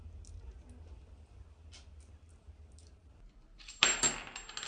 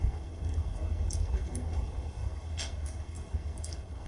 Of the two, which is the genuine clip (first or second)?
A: first